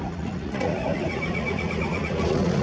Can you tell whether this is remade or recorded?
remade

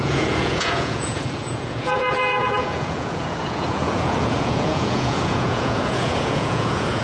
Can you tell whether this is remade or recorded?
remade